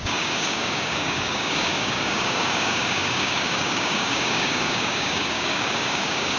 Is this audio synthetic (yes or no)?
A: yes